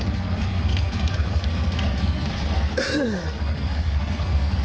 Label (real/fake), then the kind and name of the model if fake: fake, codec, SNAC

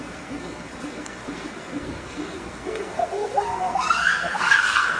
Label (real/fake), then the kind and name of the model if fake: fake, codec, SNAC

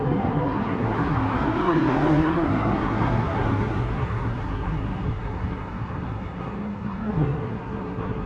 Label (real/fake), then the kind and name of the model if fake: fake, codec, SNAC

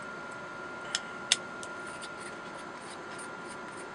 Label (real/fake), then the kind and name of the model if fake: real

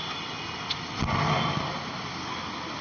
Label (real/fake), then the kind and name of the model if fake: real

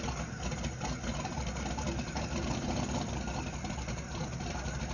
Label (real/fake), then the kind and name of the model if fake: real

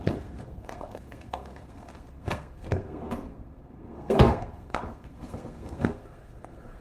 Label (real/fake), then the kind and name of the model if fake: fake, codec, SNAC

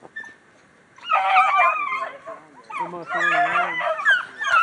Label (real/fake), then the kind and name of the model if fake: real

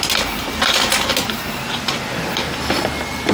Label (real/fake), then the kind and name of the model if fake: real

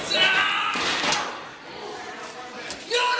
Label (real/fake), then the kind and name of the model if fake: real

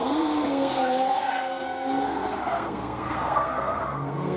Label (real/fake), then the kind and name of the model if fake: fake, codec, SNAC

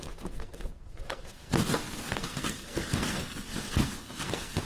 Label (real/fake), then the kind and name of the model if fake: fake, codec, SNAC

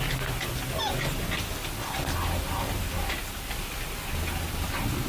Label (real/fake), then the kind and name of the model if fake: real